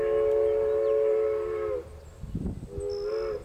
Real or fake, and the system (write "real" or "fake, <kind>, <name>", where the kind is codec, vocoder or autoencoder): real